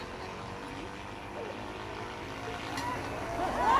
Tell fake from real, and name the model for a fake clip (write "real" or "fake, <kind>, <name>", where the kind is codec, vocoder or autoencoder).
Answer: real